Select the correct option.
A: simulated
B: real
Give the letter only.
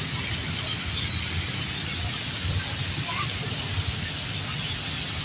B